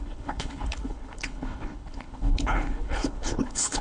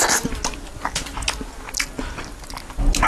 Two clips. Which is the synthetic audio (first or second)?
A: first